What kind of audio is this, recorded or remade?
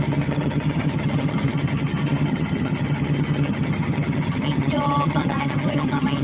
remade